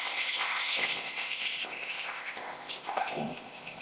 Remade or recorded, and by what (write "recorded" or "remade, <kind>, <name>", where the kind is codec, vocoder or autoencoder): remade, codec, ZipCodec